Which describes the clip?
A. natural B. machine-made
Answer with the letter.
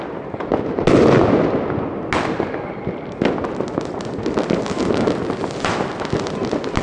A